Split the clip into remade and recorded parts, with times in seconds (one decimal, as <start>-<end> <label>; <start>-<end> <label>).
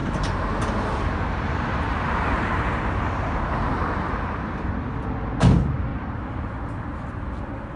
0.0-4.7 remade; 4.7-5.9 recorded; 5.9-6.5 remade; 6.5-7.8 recorded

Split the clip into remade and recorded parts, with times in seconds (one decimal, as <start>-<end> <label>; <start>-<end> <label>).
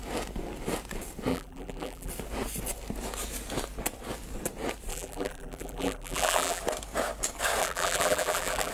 0.0-1.3 recorded; 1.3-2.1 remade; 2.1-4.9 recorded; 4.9-6.6 remade; 6.6-7.6 recorded; 7.6-8.7 remade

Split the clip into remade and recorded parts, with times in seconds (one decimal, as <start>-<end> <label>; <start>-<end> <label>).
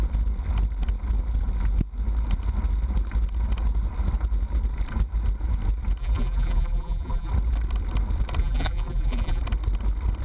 0.0-6.0 recorded; 6.0-7.3 remade; 7.3-8.4 recorded; 8.4-9.4 remade; 9.4-10.2 recorded